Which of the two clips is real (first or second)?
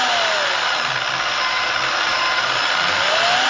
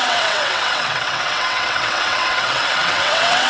first